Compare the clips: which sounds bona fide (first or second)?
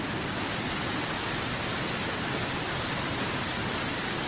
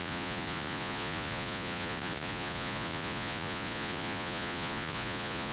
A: first